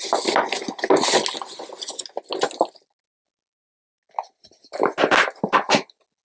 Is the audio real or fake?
real